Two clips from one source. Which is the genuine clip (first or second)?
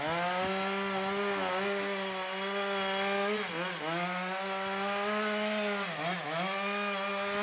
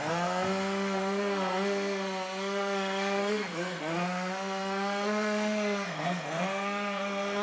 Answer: first